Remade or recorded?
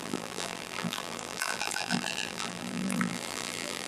remade